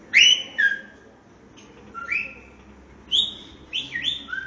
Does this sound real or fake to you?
real